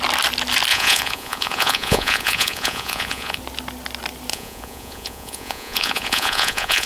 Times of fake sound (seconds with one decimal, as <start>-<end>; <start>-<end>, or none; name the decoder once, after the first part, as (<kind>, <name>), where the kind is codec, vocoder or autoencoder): 0.7-3.4 (vocoder, Vocos); 4.3-6.9